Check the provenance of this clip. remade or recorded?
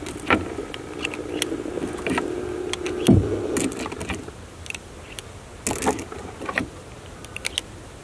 recorded